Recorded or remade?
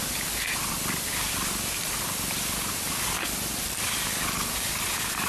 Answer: recorded